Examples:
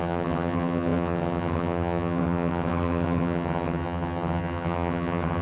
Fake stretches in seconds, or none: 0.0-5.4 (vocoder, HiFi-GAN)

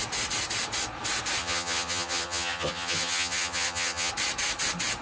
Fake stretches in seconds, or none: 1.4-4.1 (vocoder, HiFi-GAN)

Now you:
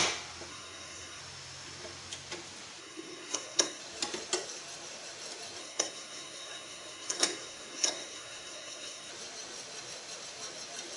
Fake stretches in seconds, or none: 0.5-1.2 (codec, SNAC); 2.8-3.8; 5.6-9.1

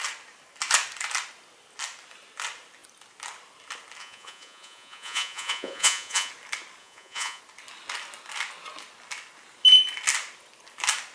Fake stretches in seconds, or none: 4.0-6.3 (vocoder, Vocos); 6.8-7.4

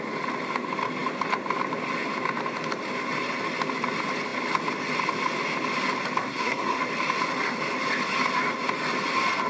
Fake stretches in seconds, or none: 6.2-6.8 (codec, SNAC)

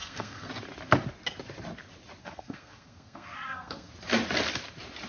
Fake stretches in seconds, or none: 0.0-0.5 (codec, SNAC); 2.2-3.9